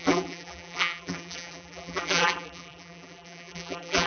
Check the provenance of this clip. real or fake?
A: fake